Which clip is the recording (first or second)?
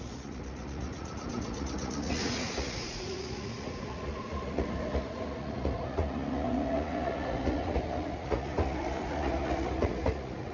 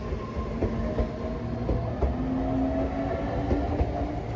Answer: second